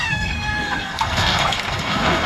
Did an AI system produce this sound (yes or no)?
yes